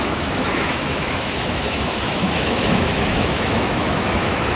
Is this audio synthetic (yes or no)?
yes